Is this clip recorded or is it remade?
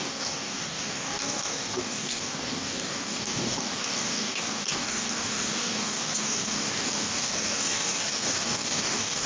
remade